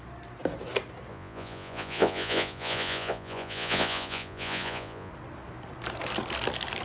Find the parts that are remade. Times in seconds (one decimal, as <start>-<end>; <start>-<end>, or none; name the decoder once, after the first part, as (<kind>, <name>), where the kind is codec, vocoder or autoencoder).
1.1-5.1 (vocoder, Vocos)